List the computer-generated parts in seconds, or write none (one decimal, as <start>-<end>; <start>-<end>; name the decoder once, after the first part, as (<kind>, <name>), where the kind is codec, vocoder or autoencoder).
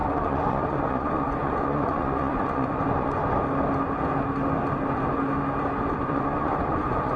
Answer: 0.0-3.2 (vocoder, Vocos); 5.9-7.2